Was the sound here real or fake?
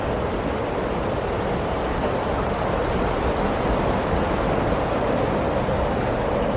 real